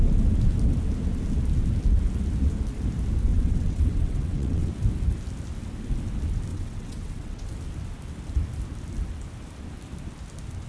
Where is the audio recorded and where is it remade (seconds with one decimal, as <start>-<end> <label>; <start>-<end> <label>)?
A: 0.0-3.3 recorded; 3.3-4.7 remade; 4.7-6.5 recorded; 6.5-7.5 remade; 7.5-10.7 recorded